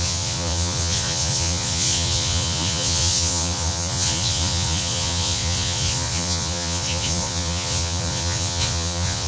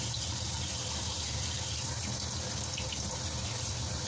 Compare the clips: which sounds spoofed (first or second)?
first